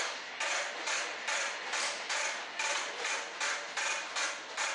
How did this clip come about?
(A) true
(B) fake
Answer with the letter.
A